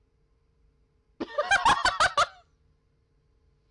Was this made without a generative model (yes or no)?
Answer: yes